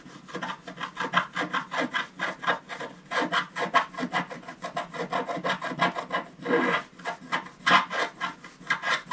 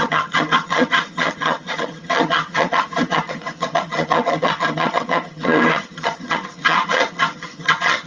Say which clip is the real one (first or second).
first